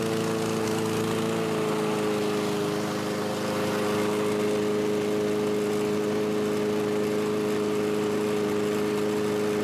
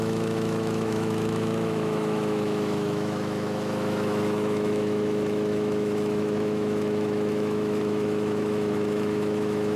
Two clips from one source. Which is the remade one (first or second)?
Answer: second